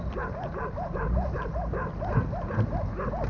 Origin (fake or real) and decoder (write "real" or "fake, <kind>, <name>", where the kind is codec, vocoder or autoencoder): real